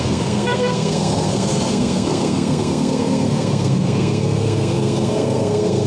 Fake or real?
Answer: fake